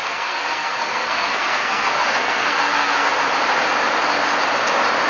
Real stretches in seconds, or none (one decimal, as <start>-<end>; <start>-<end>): 3.1-5.1